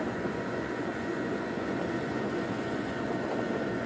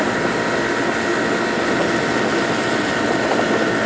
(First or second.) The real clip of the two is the second